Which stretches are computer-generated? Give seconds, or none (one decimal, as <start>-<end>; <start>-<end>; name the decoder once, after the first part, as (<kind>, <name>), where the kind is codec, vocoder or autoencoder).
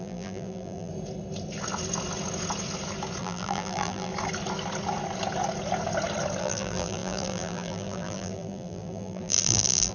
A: 0.0-0.9 (vocoder, BigVGAN v2); 3.2-4.1; 6.4-9.9